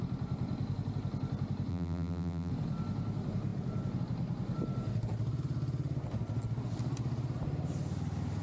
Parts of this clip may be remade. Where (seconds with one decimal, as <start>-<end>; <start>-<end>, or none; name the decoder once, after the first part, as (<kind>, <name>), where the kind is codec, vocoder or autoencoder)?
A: 1.7-2.5 (vocoder, BigVGAN v2)